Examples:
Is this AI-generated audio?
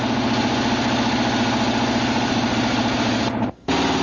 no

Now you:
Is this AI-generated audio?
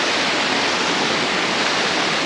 no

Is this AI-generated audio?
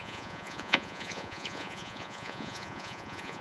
yes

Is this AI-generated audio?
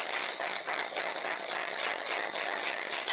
yes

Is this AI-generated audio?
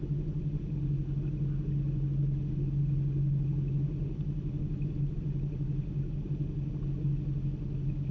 no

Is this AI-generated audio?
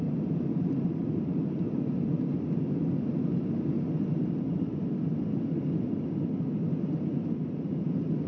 no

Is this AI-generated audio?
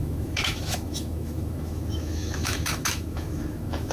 yes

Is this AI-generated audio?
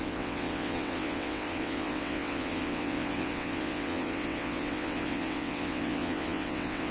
yes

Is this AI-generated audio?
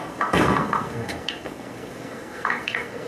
yes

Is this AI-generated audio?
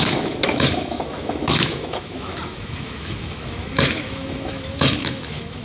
yes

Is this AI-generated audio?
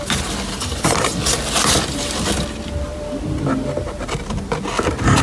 no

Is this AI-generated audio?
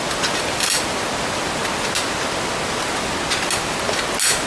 no